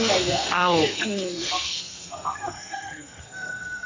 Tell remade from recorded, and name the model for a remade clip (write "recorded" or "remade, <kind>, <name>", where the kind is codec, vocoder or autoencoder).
remade, codec, SNAC